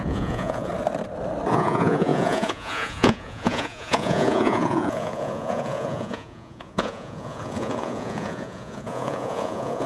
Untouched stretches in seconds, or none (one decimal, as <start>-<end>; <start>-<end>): 0.7-1.5